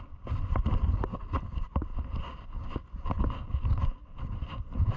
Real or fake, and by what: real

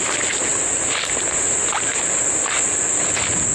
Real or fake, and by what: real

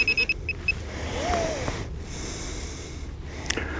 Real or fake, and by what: real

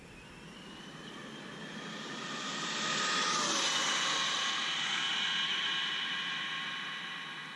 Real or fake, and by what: real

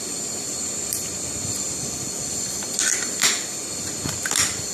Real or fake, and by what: real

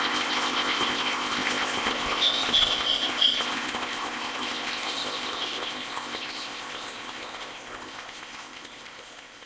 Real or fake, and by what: fake, codec, ZipCodec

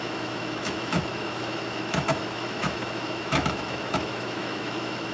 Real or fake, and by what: fake, autoencoder, DAC-VAE